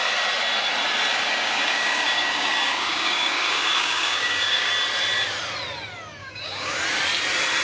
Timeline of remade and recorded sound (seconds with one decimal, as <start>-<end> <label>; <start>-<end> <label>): 0.0-1.1 recorded; 1.1-4.7 remade; 4.7-6.2 recorded; 6.2-6.8 remade; 6.8-7.6 recorded